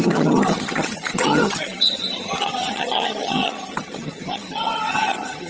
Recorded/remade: remade